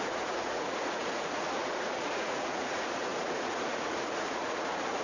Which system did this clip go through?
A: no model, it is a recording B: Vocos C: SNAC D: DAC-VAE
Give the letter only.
B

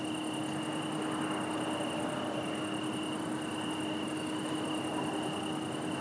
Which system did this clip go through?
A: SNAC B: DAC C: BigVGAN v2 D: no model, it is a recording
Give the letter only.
D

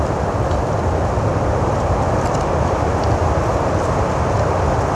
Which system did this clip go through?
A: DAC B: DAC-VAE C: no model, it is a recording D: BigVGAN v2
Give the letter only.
C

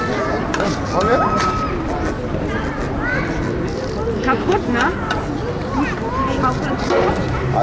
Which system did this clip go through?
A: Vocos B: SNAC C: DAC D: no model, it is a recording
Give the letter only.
D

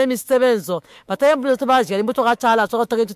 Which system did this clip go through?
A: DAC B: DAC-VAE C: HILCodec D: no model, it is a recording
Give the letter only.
B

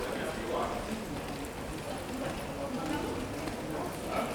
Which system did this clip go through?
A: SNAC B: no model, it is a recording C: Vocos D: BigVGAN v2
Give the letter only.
B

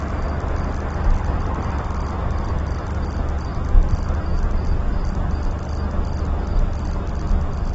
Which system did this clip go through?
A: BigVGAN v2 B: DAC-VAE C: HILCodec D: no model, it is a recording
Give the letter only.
D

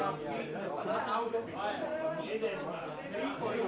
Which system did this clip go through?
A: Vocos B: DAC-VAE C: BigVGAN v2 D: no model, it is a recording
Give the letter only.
D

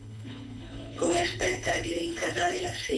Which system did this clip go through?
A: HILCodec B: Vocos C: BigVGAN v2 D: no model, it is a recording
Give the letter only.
A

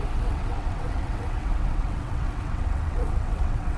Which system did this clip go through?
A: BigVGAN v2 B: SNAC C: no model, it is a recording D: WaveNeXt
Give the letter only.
D